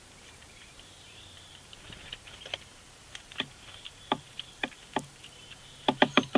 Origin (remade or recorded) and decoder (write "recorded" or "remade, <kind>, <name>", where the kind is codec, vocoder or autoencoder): remade, vocoder, BigVGAN v2